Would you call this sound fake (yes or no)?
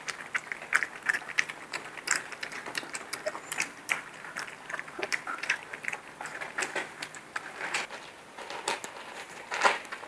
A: yes